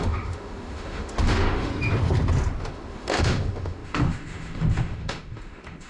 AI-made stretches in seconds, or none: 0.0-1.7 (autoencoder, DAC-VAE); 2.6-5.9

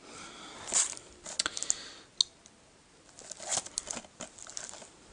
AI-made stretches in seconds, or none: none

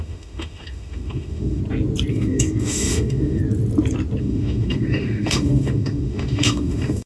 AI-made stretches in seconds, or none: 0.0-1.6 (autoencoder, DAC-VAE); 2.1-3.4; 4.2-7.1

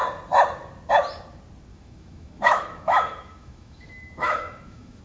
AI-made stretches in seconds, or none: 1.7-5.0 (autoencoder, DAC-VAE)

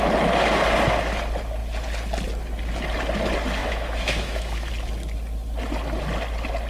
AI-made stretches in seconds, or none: 3.6-4.7 (autoencoder, DAC-VAE)

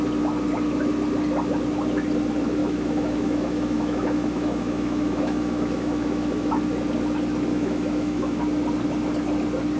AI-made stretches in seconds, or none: 2.6-6.5 (autoencoder, DAC-VAE); 7.5-8.4